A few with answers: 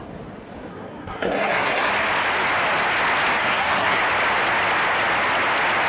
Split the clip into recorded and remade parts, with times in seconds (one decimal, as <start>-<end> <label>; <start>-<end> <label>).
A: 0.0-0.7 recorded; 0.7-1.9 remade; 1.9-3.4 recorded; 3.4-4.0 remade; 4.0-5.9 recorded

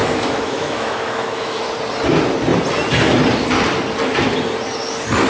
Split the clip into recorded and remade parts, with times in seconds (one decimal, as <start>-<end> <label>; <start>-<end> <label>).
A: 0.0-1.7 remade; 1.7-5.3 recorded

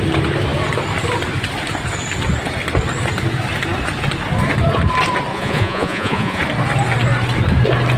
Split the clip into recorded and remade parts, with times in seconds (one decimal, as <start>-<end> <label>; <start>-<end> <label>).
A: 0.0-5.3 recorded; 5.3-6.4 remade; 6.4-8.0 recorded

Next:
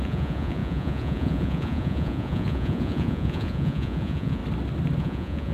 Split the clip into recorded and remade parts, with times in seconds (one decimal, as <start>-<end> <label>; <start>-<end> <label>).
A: 0.0-4.4 remade; 4.4-5.0 recorded; 5.0-5.5 remade

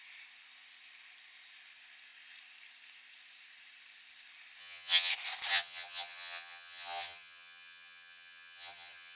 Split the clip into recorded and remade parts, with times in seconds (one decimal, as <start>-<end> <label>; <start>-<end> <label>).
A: 0.0-4.6 recorded; 4.6-5.1 remade; 5.1-5.5 recorded; 5.5-9.2 remade

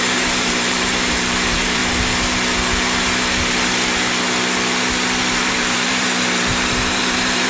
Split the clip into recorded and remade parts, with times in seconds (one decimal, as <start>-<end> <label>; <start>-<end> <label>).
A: 0.0-1.8 remade; 1.8-5.5 recorded; 5.5-7.5 remade